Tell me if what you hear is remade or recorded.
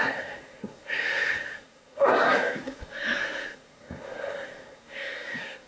remade